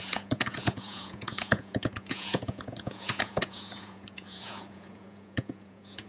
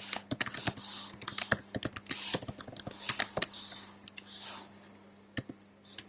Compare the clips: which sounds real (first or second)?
second